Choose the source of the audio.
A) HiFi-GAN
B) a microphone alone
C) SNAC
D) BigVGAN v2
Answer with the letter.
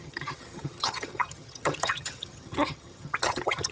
A